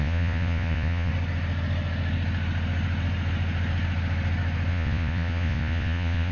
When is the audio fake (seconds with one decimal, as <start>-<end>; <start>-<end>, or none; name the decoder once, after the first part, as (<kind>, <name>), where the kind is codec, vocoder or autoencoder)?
0.0-1.1 (vocoder, Vocos); 4.7-6.3